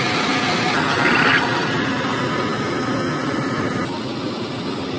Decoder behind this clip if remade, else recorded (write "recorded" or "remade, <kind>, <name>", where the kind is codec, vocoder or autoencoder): recorded